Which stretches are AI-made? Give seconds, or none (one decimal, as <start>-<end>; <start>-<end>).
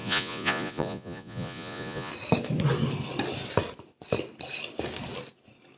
0.0-2.1